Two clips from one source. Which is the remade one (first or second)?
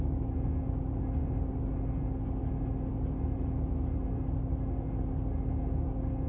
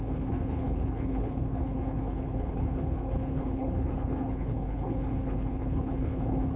second